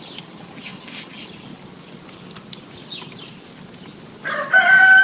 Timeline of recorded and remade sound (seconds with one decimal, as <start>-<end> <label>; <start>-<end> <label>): 0.0-5.0 recorded